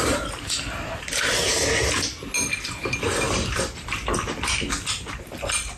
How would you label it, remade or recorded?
recorded